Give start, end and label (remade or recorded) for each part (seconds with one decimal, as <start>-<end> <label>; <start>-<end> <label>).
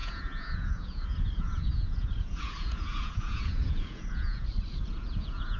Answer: 0.0-5.6 remade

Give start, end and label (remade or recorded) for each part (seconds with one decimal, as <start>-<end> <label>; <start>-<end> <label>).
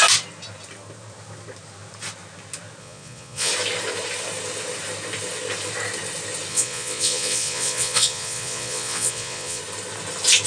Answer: 0.0-2.8 recorded; 2.8-3.5 remade; 3.5-6.5 recorded; 6.5-9.6 remade; 9.6-10.5 recorded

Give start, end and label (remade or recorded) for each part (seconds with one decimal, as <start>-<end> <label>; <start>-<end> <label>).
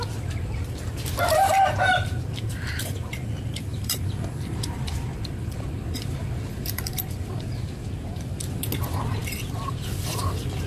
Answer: 0.0-1.9 recorded; 1.9-3.1 remade; 3.1-3.7 recorded; 3.7-7.5 remade; 7.5-9.2 recorded; 9.2-10.7 remade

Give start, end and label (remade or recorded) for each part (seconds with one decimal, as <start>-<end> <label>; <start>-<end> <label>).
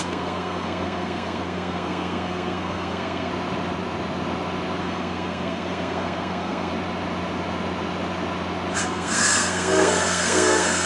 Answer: 0.0-3.3 remade; 3.3-4.8 recorded; 4.8-6.7 remade; 6.7-8.8 recorded; 8.8-10.9 remade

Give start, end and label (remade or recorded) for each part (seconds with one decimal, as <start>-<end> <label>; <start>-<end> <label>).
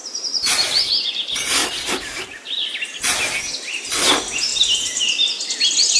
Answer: 0.0-1.1 remade; 1.1-6.0 recorded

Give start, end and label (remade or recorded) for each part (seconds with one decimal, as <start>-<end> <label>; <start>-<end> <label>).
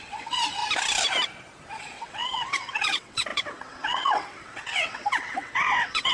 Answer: 0.0-0.6 remade; 0.6-1.8 recorded; 1.8-6.1 remade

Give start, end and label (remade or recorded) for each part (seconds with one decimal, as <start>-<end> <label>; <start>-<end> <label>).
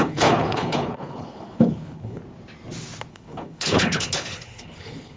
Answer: 0.0-2.2 remade; 2.2-3.1 recorded; 3.1-5.2 remade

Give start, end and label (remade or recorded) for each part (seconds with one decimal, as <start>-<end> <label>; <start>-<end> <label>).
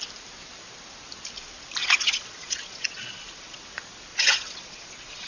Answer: 0.0-1.8 recorded; 1.8-3.6 remade; 3.6-4.1 recorded; 4.1-5.3 remade